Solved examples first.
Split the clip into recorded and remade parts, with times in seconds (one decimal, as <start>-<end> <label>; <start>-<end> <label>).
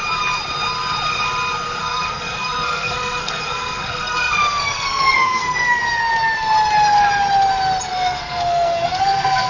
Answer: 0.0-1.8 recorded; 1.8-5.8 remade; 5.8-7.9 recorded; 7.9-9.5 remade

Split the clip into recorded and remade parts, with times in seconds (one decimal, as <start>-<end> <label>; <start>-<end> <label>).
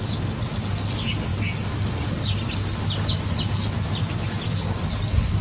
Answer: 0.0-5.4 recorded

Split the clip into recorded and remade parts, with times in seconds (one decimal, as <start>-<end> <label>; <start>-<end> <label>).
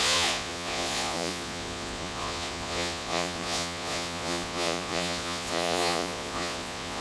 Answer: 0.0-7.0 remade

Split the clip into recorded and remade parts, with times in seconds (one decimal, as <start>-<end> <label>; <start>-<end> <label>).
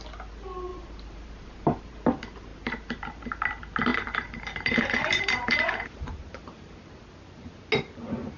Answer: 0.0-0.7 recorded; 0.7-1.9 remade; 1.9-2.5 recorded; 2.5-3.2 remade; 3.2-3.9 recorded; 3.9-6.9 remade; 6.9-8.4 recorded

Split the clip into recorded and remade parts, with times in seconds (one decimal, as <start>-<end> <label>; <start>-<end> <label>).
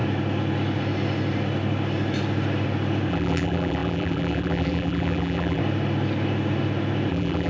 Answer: 0.0-3.1 recorded; 3.1-5.6 remade; 5.6-7.1 recorded; 7.1-7.5 remade